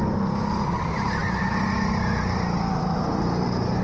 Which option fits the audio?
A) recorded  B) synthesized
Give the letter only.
A